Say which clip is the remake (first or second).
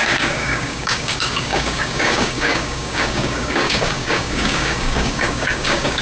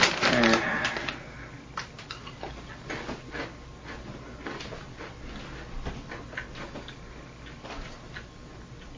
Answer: first